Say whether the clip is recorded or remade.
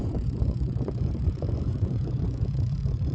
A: remade